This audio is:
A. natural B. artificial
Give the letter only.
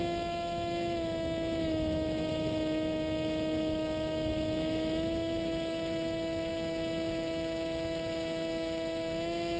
B